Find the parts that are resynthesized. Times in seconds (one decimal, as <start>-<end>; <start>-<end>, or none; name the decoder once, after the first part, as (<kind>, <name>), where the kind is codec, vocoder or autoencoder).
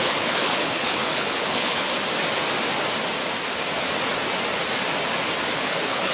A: 0.0-1.9 (codec, HILCodec); 5.6-6.1